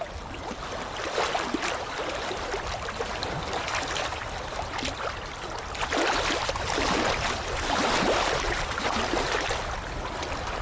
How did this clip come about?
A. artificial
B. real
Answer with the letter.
B